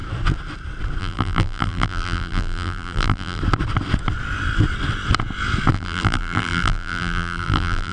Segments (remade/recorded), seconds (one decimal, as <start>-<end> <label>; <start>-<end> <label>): 0.0-1.0 recorded; 1.0-3.4 remade; 3.4-5.7 recorded; 5.7-7.9 remade